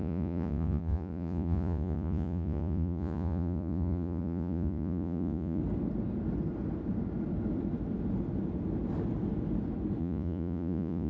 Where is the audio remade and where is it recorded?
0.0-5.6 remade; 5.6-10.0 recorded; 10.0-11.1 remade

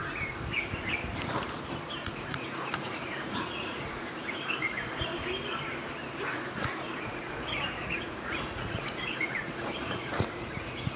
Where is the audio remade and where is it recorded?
0.0-2.1 recorded; 2.1-5.1 remade; 5.1-6.2 recorded; 6.2-11.0 remade

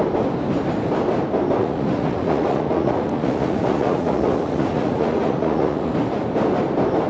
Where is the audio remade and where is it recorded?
0.0-1.6 recorded; 1.6-5.9 remade; 5.9-7.1 recorded

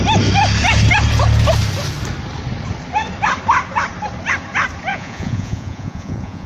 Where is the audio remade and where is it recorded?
0.0-4.9 recorded; 4.9-6.5 remade

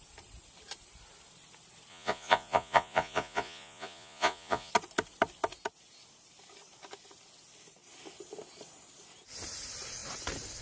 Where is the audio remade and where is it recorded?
0.0-1.9 recorded; 1.9-4.7 remade; 4.7-10.6 recorded